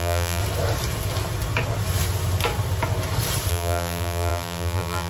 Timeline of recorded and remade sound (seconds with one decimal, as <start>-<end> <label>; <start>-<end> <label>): 0.0-0.4 remade; 0.4-3.5 recorded; 3.5-5.1 remade